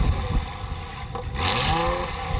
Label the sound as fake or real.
real